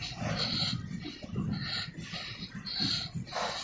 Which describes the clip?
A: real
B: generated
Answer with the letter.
A